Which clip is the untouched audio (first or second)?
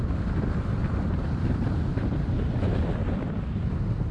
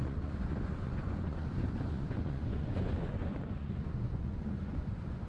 first